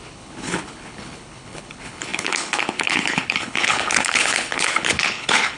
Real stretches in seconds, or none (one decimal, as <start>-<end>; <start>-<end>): none